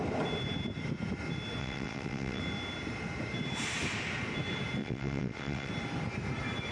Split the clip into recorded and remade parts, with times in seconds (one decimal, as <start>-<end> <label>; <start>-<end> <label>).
0.0-1.6 recorded; 1.6-2.4 remade; 2.4-4.8 recorded; 4.8-5.7 remade; 5.7-6.7 recorded